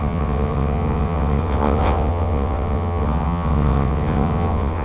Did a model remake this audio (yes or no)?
yes